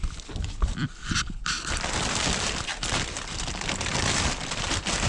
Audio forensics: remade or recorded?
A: remade